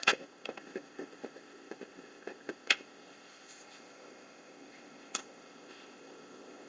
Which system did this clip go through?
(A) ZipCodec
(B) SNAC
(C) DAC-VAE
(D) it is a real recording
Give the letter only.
A